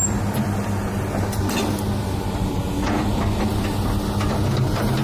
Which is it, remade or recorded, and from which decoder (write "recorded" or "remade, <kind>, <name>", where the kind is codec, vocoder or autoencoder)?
recorded